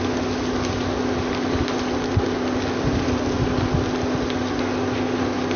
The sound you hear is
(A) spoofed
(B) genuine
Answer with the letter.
B